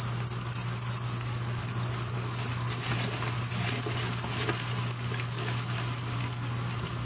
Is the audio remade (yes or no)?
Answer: no